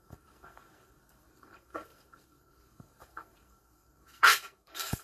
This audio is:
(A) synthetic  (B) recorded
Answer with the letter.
A